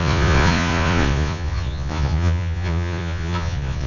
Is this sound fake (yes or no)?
yes